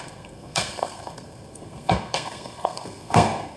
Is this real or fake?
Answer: fake